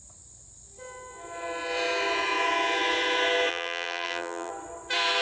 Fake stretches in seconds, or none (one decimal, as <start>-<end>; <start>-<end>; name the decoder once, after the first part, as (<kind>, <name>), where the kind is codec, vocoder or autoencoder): 3.5-4.5 (vocoder, BigVGAN v2)